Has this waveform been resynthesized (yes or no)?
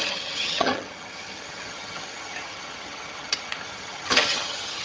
yes